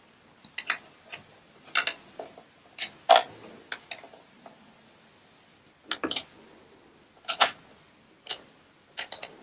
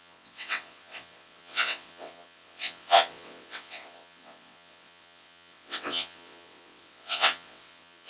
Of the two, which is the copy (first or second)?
second